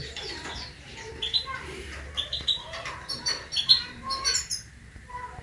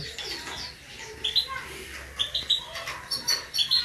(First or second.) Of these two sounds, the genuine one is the second